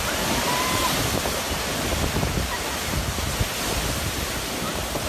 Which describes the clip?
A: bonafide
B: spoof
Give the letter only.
A